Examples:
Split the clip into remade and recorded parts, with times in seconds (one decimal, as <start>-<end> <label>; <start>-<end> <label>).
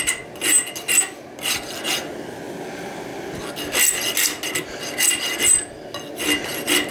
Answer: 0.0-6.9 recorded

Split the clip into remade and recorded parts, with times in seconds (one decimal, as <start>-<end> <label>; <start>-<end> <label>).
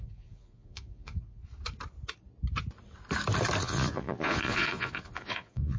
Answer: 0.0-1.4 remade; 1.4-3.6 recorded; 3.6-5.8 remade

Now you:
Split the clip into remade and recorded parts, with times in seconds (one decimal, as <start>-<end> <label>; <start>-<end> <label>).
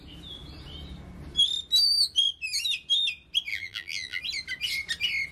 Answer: 0.0-3.5 recorded; 3.5-4.2 remade; 4.2-5.3 recorded